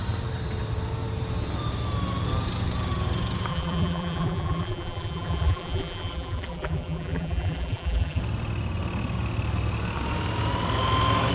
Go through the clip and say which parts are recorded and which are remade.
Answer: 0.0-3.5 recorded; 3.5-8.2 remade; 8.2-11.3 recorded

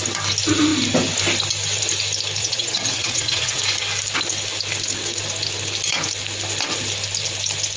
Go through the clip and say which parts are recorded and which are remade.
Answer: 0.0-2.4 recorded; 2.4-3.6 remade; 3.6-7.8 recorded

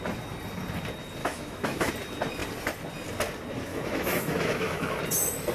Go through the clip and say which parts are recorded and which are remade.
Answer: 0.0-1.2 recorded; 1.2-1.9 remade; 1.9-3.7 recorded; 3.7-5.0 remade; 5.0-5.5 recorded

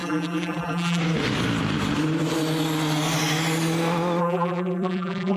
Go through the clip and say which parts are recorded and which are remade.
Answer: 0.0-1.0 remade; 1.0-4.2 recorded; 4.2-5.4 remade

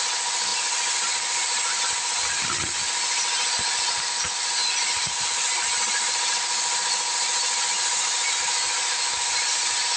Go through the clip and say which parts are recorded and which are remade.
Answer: 0.0-10.0 recorded

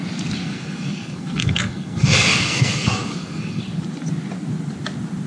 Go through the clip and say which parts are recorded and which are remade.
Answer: 0.0-0.4 recorded; 0.4-3.6 remade; 3.6-5.3 recorded